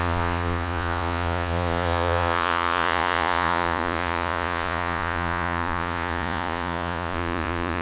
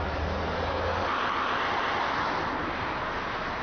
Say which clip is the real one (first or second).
second